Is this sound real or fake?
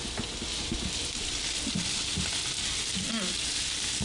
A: real